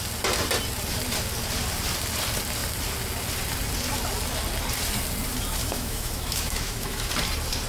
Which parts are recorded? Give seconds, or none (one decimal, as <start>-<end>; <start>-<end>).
0.0-5.6; 7.1-7.7